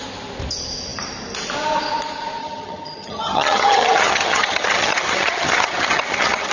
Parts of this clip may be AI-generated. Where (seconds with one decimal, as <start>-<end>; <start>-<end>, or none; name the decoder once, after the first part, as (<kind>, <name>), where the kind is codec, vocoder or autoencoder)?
2.4-6.5 (vocoder, HiFi-GAN)